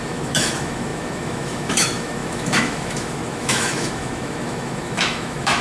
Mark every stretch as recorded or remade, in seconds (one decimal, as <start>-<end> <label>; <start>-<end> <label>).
0.0-5.6 remade